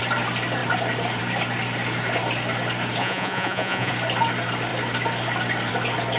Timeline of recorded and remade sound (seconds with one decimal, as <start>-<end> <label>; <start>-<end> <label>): 0.0-3.0 recorded; 3.0-3.9 remade; 3.9-6.2 recorded